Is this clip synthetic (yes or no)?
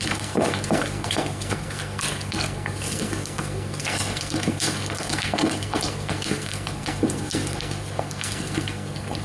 yes